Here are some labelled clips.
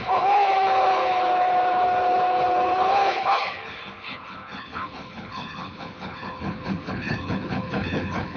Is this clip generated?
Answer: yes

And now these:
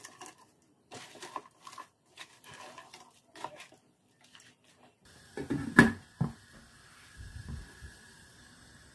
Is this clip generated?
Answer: yes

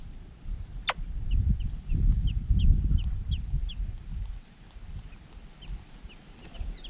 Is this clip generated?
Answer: no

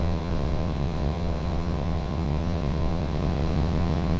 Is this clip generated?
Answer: yes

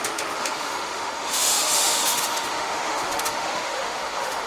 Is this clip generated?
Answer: yes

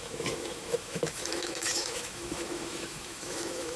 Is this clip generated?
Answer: yes